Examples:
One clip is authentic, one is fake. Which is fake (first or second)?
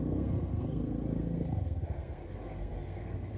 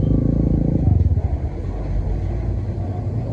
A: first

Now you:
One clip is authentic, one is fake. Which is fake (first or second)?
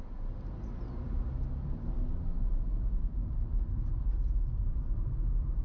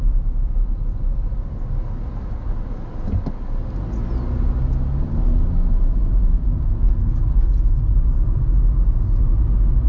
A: first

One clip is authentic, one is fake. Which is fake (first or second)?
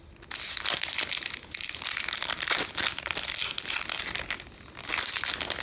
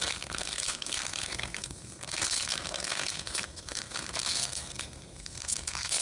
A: second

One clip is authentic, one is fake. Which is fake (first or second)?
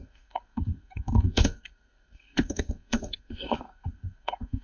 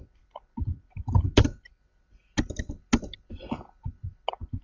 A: first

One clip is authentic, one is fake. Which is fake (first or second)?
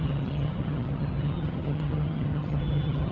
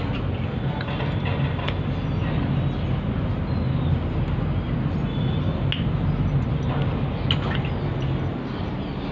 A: first